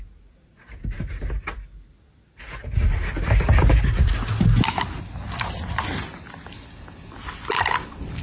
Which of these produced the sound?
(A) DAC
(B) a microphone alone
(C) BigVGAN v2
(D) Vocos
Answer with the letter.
B